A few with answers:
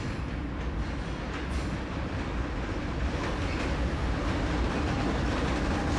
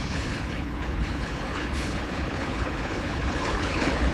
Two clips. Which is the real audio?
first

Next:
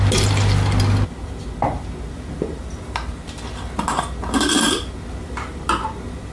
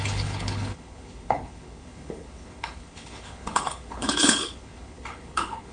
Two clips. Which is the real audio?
first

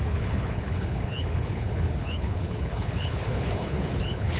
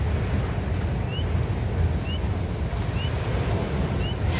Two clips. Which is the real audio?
second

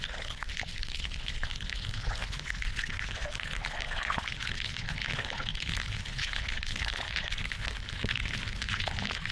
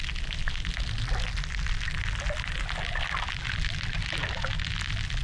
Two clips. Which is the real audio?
second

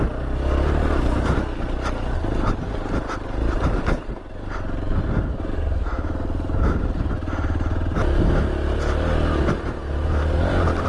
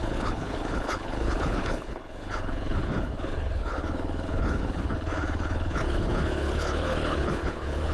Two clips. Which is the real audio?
first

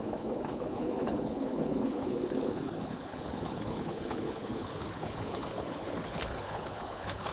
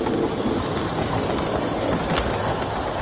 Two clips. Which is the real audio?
second